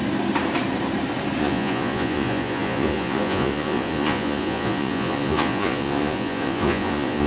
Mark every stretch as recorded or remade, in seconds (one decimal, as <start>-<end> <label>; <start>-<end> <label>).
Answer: 0.0-1.4 recorded; 1.4-7.3 remade